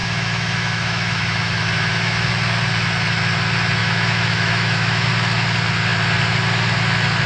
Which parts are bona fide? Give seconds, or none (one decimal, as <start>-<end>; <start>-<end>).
2.3-3.8; 5.1-7.3